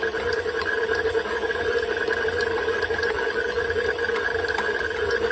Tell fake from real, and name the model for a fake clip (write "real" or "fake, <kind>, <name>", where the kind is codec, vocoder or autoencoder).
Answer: real